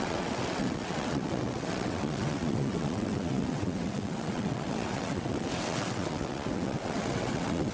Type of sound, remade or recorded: remade